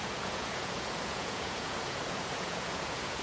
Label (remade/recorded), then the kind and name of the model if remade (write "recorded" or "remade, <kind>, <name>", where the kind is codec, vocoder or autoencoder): remade, vocoder, Vocos